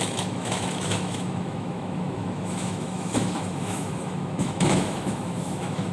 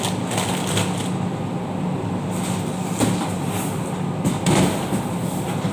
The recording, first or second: second